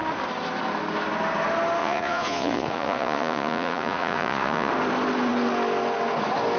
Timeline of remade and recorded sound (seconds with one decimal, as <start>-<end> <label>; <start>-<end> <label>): 0.0-1.8 recorded; 1.8-4.7 remade; 4.7-6.6 recorded